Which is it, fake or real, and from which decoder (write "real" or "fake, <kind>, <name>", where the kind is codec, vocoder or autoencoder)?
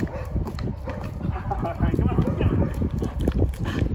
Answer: fake, vocoder, BigVGAN v2